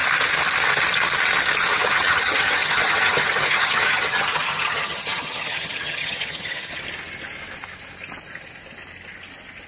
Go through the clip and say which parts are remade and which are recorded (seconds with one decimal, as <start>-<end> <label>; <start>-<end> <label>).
0.0-1.7 recorded; 1.7-6.7 remade; 6.7-9.7 recorded